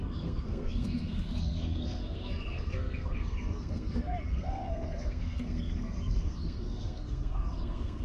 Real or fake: fake